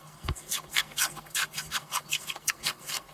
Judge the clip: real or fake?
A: fake